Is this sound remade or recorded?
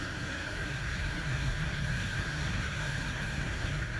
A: remade